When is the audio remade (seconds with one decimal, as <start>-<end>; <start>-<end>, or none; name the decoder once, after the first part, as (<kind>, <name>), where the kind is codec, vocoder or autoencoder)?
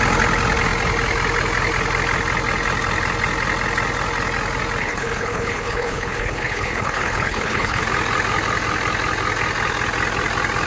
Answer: 4.8-7.8 (codec, HILCodec)